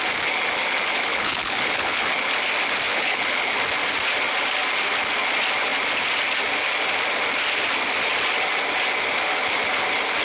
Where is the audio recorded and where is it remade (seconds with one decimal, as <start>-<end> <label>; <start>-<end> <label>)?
0.0-1.1 recorded; 1.1-2.1 remade; 2.1-2.9 recorded; 2.9-3.5 remade; 3.5-10.2 recorded